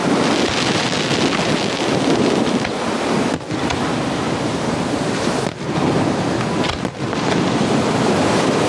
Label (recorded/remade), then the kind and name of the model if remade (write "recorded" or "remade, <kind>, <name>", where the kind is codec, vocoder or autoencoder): recorded